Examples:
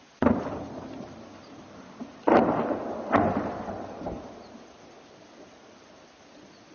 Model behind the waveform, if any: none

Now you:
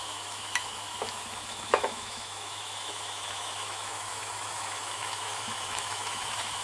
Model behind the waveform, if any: autoencoder, DAC-VAE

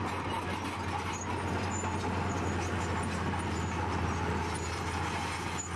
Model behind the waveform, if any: none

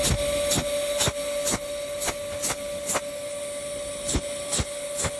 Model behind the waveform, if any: none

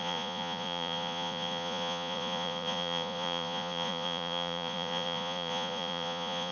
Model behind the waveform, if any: vocoder, Vocos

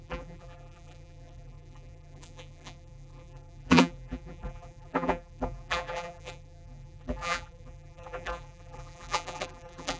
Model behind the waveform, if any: vocoder, BigVGAN v2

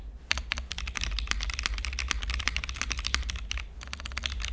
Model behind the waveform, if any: none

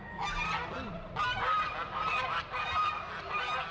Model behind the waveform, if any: none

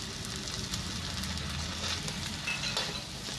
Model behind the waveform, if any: none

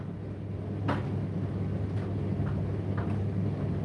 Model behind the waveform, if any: none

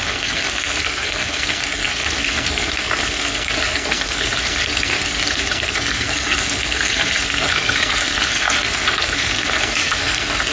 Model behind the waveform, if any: codec, SNAC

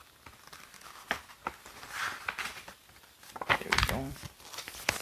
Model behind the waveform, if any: vocoder, BigVGAN v2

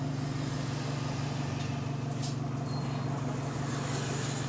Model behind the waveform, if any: none